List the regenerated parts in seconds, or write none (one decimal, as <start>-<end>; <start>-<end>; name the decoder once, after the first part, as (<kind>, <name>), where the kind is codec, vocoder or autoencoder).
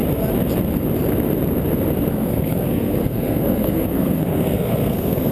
2.1-5.3 (codec, SNAC)